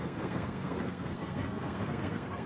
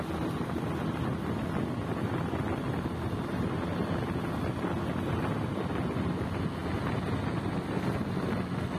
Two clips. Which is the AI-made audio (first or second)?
first